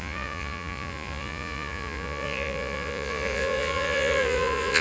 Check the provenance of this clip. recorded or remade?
remade